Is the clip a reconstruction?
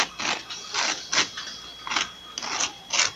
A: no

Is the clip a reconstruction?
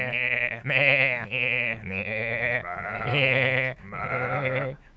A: yes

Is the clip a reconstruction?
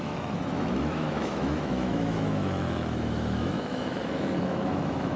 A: yes